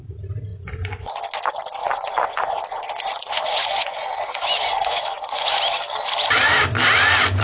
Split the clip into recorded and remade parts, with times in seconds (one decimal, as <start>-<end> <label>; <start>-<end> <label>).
0.0-0.5 recorded; 0.5-1.2 remade; 1.2-1.8 recorded; 1.8-5.6 remade; 5.6-7.4 recorded